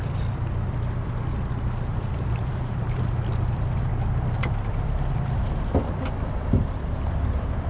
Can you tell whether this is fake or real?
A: fake